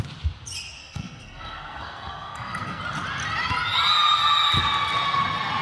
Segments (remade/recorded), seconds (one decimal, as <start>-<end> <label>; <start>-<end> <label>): 0.0-0.8 recorded; 0.8-2.8 remade; 2.8-5.6 recorded